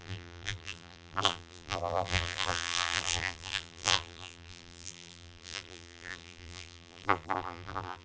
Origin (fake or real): fake